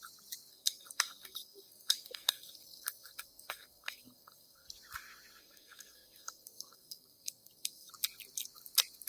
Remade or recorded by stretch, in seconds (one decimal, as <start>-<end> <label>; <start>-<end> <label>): 0.0-0.5 recorded; 0.5-4.7 remade; 4.7-5.4 recorded; 5.4-7.9 remade; 7.9-9.1 recorded